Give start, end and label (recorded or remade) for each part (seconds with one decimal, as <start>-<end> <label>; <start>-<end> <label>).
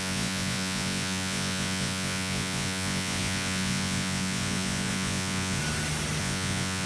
0.0-5.6 remade; 5.6-6.2 recorded; 6.2-6.9 remade